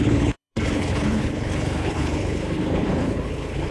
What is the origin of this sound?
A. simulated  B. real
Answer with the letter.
A